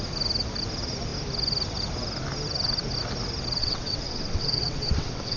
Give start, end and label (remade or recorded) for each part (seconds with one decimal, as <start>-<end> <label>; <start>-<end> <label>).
0.0-3.6 recorded; 3.6-5.4 remade